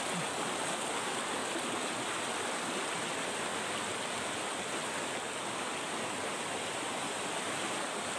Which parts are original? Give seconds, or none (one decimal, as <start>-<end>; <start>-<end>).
0.0-8.2